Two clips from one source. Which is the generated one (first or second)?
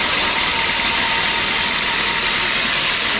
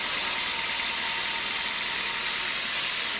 first